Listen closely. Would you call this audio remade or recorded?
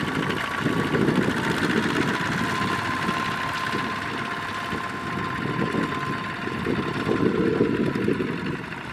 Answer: recorded